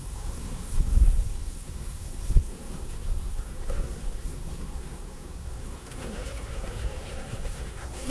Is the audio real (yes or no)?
no